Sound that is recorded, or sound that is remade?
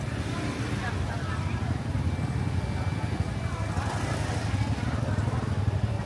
recorded